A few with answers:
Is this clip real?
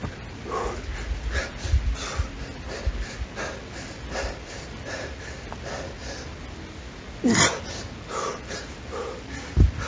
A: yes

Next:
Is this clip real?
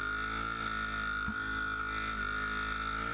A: yes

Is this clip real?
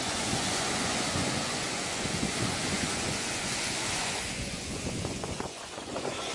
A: no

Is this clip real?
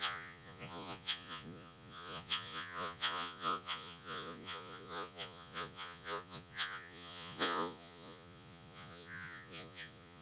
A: no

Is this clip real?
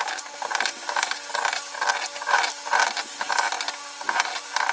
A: yes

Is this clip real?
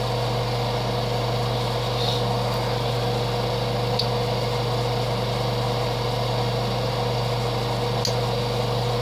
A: yes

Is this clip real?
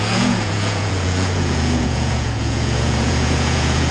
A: no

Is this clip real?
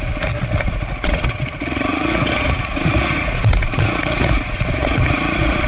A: no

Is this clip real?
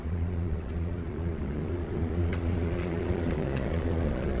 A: no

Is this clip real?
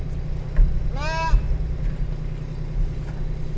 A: yes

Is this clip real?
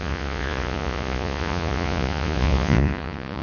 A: no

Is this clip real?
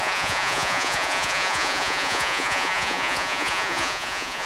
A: no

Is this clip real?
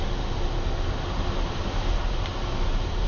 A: yes